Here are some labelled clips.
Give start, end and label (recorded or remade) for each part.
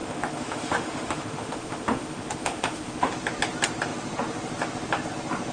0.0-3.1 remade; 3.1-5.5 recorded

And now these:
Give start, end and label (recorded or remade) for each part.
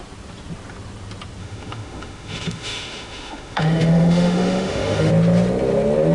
0.0-1.4 recorded; 1.4-5.1 remade; 5.1-6.1 recorded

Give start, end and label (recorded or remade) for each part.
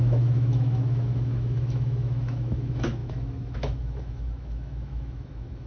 0.0-5.7 remade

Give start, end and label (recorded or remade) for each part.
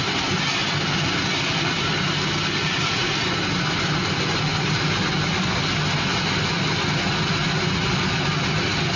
0.0-9.0 recorded